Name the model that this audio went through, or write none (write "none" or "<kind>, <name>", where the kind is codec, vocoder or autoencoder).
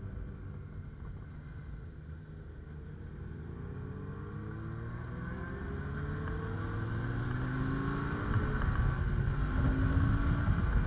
none